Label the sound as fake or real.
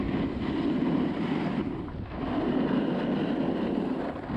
real